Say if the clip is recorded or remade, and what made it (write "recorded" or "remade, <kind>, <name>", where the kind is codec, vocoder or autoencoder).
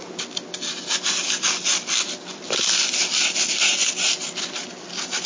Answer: recorded